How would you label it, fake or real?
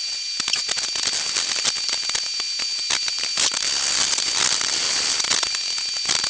real